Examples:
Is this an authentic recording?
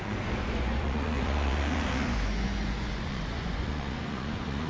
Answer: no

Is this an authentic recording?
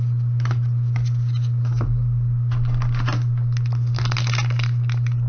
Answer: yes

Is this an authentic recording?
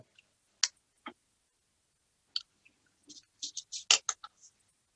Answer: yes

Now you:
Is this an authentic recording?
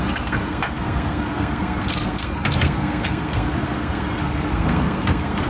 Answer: no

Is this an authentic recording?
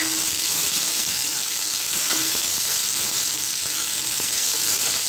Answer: no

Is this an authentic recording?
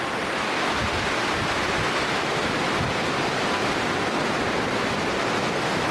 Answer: yes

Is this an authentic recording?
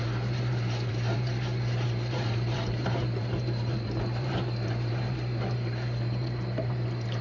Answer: no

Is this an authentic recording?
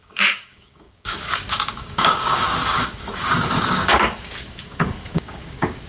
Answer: no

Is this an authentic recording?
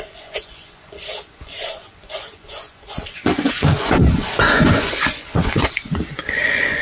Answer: no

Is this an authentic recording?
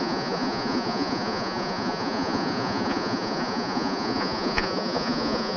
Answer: no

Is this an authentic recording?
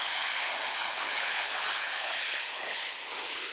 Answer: no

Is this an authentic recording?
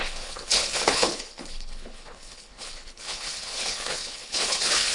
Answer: no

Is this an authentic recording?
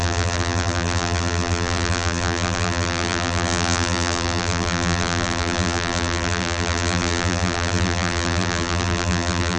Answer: no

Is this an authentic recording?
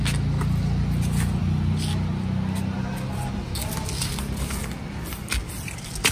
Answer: yes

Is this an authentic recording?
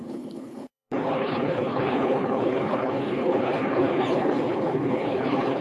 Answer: no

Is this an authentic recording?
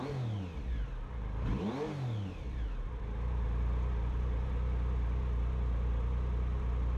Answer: yes